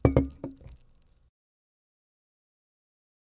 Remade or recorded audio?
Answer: recorded